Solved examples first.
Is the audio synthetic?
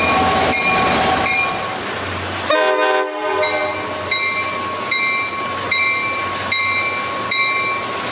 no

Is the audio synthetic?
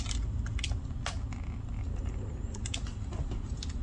no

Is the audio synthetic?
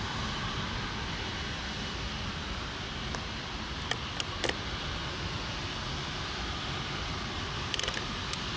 no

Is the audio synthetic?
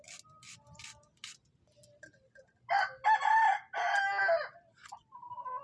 no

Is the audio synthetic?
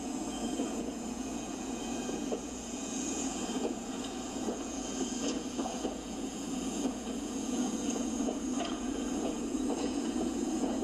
yes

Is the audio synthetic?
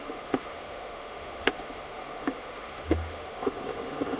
yes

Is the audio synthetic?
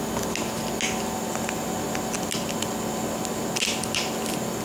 no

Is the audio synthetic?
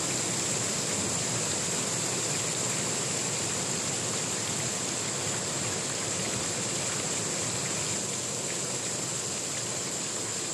no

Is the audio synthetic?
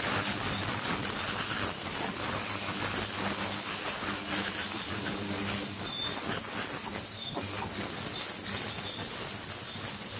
no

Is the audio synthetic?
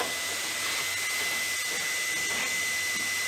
no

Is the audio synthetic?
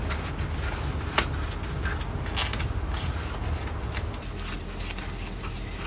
no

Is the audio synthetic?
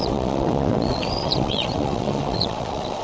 yes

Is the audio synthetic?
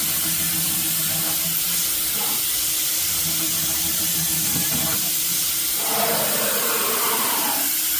no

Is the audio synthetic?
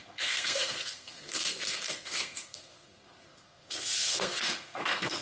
yes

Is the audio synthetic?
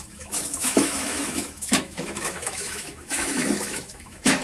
yes